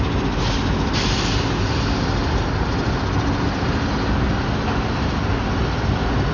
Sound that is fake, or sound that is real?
real